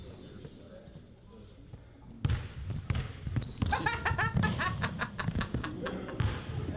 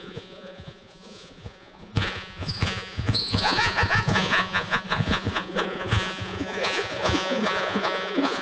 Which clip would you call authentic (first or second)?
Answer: first